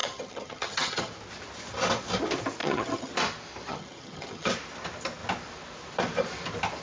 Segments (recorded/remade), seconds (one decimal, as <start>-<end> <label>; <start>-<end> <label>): 0.0-1.1 remade; 1.1-2.6 recorded; 2.6-3.1 remade; 3.1-3.7 recorded; 3.7-4.5 remade; 4.5-6.8 recorded